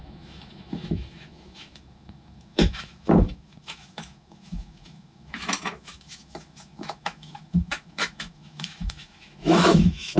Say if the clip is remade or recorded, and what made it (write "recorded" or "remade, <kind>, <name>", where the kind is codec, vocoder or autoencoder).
remade, autoencoder, DAC-VAE